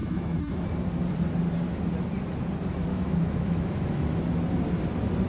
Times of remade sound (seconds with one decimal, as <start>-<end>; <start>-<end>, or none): 0.0-0.6; 2.9-3.8